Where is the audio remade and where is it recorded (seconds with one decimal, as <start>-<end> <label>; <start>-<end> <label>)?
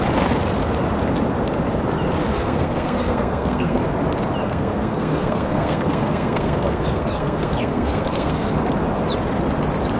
0.0-2.3 recorded; 2.3-3.8 remade; 3.8-4.4 recorded; 4.4-8.5 remade; 8.5-10.0 recorded